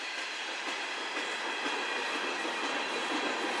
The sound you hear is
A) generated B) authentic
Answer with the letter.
B